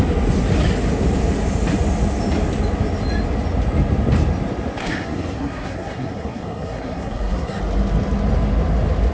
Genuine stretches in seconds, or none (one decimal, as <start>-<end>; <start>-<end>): 0.0-4.8; 7.6-9.1